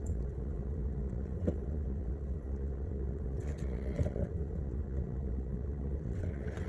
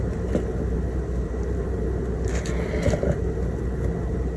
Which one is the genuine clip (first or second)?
second